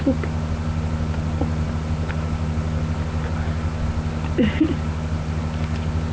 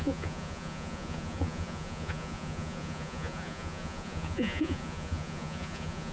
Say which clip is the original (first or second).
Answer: first